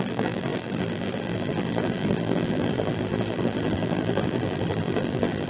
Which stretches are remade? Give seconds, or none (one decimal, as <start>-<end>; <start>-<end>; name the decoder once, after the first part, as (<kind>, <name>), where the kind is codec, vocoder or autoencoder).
0.0-5.5 (vocoder, BigVGAN v2)